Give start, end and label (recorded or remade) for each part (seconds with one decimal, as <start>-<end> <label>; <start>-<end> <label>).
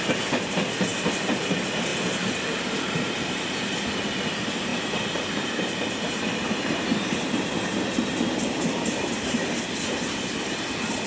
0.0-1.9 recorded; 1.9-3.6 remade; 3.6-4.7 recorded; 4.7-9.6 remade; 9.6-11.1 recorded